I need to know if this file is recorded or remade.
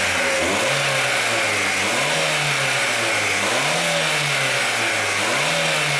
recorded